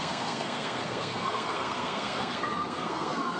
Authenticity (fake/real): fake